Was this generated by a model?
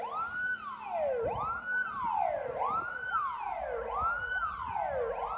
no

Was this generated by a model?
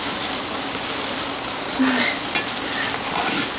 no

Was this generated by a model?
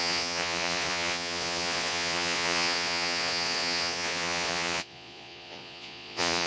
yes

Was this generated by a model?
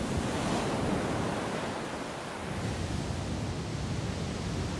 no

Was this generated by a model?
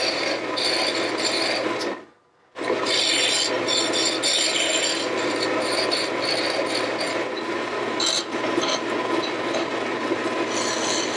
no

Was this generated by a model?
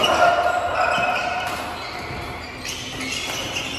no